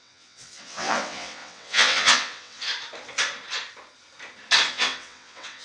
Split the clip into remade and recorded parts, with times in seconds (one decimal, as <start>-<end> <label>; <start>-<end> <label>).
0.0-2.7 remade; 2.7-4.7 recorded; 4.7-5.6 remade